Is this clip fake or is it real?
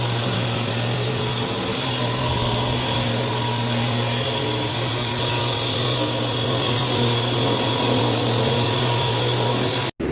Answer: real